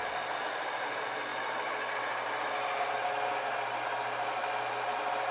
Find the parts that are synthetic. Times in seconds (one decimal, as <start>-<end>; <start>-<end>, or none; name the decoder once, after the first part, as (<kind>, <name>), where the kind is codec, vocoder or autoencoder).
none